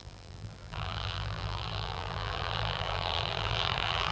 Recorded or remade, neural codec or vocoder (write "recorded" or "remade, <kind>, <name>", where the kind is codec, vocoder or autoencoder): remade, vocoder, BigVGAN v2